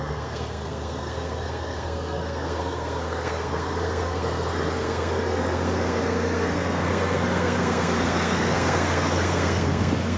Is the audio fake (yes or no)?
yes